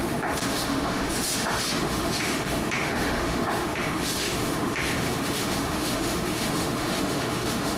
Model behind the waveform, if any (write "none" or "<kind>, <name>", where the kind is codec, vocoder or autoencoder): autoencoder, DAC-VAE